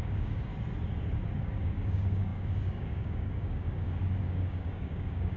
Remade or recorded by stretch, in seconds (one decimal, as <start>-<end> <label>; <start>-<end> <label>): 0.0-0.5 remade; 0.5-1.4 recorded; 1.4-5.4 remade